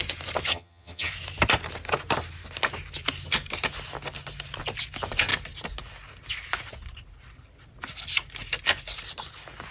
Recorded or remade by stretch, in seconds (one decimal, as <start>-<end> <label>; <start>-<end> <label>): 0.0-0.5 recorded; 0.5-1.1 remade; 1.1-9.7 recorded